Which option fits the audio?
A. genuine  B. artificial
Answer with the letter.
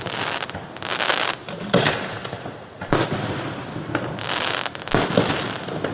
A